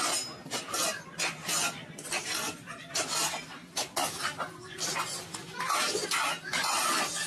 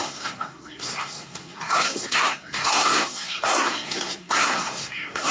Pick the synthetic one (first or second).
second